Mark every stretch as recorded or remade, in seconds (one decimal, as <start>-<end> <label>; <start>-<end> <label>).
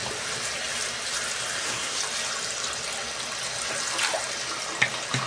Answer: 0.0-1.6 recorded; 1.6-2.0 remade; 2.0-5.3 recorded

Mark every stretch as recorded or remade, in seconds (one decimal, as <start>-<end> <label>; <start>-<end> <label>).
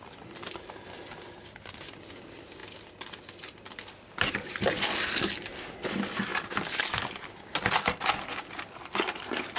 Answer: 0.0-9.6 recorded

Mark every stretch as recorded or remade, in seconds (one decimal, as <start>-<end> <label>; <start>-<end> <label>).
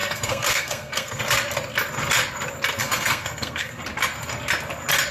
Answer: 0.0-1.2 remade; 1.2-2.8 recorded; 2.8-3.8 remade; 3.8-5.1 recorded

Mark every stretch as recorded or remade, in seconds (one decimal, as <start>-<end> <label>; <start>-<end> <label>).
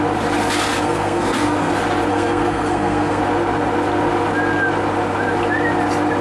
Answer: 0.0-0.7 recorded; 0.7-1.7 remade; 1.7-2.1 recorded; 2.1-3.2 remade; 3.2-6.2 recorded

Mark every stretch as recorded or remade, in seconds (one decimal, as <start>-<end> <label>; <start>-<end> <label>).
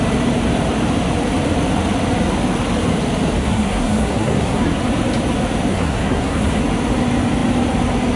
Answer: 0.0-3.4 recorded; 3.4-4.8 remade; 4.8-5.7 recorded; 5.7-6.6 remade; 6.6-8.2 recorded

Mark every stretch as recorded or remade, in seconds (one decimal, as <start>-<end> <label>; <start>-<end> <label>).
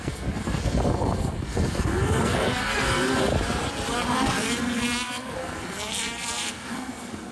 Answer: 0.0-3.1 remade; 3.1-3.9 recorded; 3.9-7.3 remade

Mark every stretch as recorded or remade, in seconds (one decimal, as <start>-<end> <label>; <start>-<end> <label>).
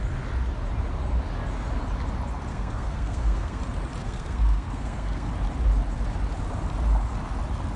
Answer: 0.0-2.5 recorded; 2.5-3.6 remade; 3.6-4.0 recorded; 4.0-5.3 remade; 5.3-7.8 recorded